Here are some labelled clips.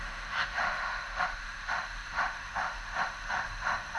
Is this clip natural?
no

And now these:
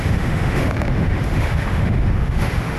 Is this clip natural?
no